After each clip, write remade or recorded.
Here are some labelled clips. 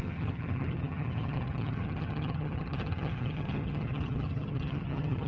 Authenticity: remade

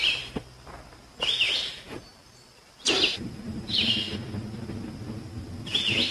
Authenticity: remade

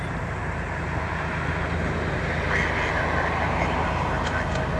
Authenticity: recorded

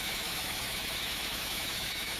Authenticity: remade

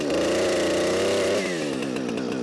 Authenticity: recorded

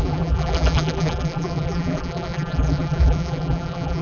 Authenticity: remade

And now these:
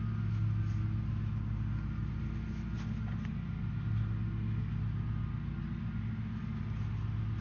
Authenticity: recorded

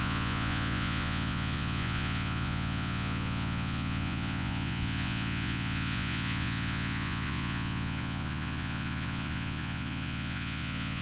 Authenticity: remade